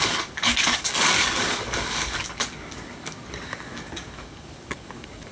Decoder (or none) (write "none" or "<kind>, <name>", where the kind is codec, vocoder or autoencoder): codec, DAC